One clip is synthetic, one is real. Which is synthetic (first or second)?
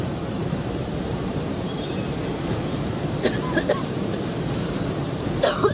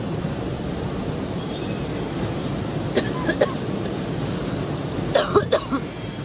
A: first